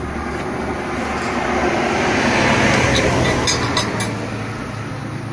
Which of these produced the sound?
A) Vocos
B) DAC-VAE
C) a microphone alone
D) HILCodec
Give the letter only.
C